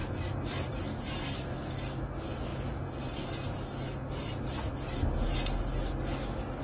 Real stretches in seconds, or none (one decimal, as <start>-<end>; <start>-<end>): 1.6-6.6